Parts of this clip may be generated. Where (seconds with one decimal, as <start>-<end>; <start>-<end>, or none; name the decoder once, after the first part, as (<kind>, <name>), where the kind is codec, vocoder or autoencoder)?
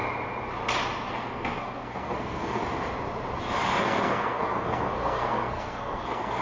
1.1-2.6 (codec, SNAC); 3.8-6.4